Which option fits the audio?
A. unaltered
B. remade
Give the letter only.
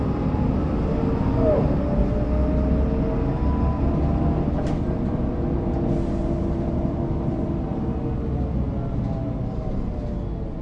A